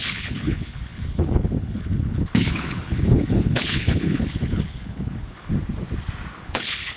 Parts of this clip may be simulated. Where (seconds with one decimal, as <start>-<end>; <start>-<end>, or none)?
0.0-5.5; 6.4-7.0